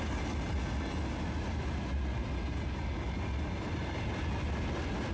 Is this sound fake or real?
real